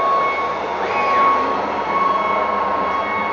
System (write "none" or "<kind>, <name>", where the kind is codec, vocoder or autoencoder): none